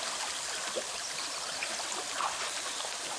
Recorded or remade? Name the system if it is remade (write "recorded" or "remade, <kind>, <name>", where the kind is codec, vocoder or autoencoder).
recorded